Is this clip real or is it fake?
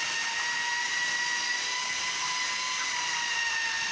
real